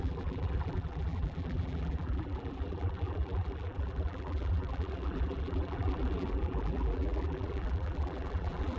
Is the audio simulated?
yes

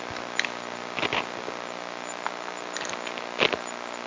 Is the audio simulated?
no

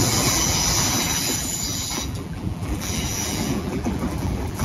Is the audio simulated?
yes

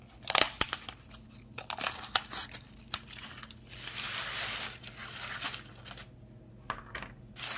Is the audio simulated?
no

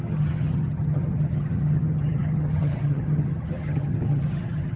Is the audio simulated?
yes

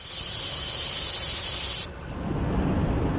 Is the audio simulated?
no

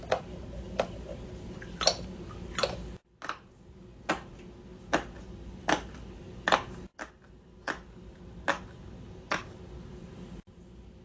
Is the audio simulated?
no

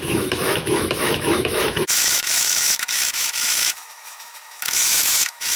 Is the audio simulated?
yes